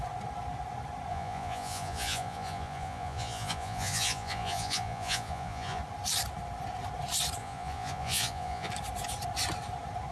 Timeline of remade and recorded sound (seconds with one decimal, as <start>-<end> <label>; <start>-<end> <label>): 0.0-1.1 recorded; 1.1-5.8 remade; 5.8-7.4 recorded; 7.4-8.7 remade; 8.7-10.1 recorded